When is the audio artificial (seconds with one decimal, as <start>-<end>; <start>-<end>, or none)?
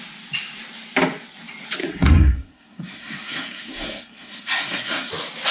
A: 1.8-5.1